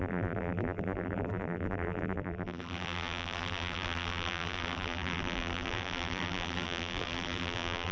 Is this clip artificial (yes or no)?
yes